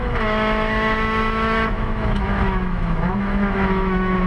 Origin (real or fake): fake